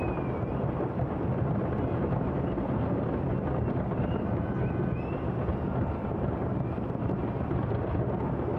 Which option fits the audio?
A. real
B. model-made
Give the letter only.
A